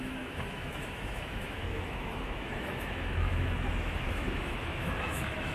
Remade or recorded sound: remade